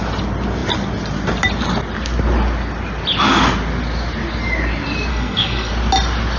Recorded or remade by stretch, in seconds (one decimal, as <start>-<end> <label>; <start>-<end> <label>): 0.0-5.1 recorded; 5.1-5.7 remade; 5.7-6.4 recorded